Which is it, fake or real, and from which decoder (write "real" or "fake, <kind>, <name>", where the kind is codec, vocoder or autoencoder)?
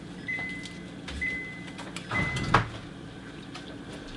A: real